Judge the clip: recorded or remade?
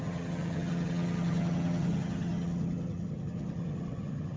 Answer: remade